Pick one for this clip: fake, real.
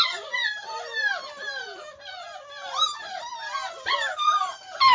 real